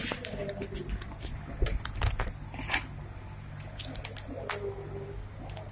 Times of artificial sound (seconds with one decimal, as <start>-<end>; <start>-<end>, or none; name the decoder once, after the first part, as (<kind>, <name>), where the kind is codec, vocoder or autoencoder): none